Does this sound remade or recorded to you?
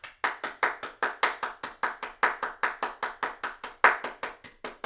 recorded